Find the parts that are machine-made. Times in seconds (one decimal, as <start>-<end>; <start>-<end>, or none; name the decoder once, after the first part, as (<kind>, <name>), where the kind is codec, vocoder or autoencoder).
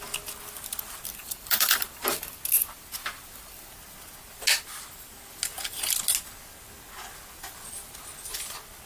1.2-2.3 (vocoder, BigVGAN v2); 3.0-3.7